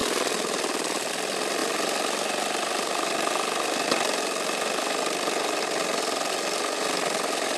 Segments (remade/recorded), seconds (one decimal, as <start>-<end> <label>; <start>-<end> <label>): 0.0-7.6 recorded